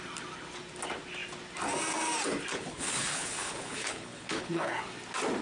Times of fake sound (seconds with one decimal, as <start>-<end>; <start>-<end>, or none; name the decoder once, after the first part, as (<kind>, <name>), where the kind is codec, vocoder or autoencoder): 2.5-4.8 (codec, HILCodec)